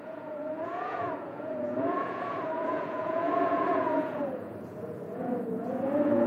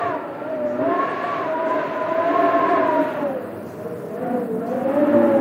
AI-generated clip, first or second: first